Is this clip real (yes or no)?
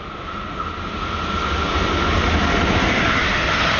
yes